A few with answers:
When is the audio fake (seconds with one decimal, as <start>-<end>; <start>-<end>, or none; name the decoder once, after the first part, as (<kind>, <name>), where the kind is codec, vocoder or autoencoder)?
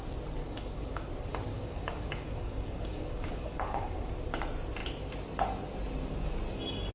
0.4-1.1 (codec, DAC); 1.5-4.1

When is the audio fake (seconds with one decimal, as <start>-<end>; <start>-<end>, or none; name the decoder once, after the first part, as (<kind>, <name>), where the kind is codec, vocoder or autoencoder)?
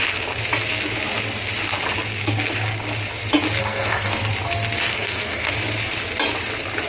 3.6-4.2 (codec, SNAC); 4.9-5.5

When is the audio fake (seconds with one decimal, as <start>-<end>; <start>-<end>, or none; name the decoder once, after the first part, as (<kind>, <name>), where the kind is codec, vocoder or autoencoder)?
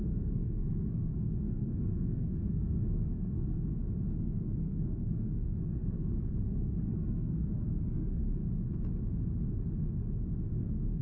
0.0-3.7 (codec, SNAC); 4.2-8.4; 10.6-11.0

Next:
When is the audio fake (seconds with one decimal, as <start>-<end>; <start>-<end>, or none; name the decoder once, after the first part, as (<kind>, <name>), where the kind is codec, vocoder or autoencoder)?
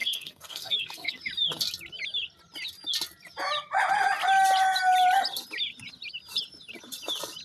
0.0-1.2 (codec, SNAC)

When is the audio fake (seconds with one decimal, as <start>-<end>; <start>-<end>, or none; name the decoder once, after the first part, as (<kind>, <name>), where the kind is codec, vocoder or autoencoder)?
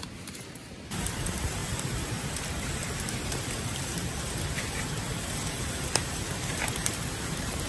0.0-7.7 (vocoder, BigVGAN v2)